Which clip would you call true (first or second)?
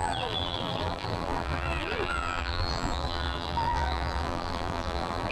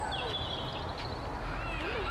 second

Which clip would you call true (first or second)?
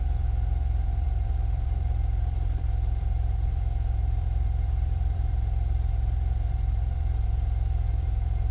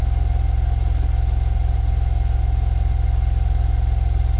second